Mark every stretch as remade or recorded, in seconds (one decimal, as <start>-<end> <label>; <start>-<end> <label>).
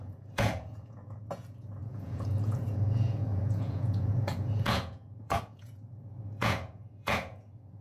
0.0-7.8 remade